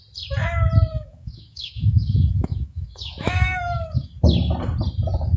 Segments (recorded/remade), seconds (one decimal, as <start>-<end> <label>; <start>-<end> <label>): 0.0-0.9 recorded; 0.9-4.1 remade; 4.1-5.4 recorded